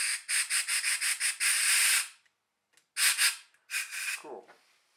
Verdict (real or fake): real